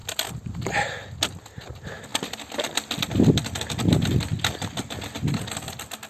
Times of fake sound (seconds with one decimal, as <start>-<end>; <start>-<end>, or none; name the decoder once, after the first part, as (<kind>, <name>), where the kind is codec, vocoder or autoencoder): none